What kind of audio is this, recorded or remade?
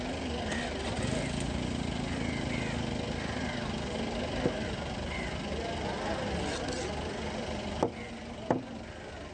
recorded